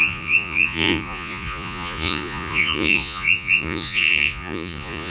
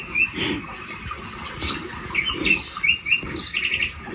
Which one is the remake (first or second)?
first